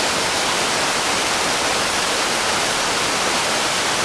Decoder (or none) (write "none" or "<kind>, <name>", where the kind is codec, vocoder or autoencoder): none